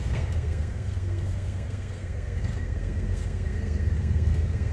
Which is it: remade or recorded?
remade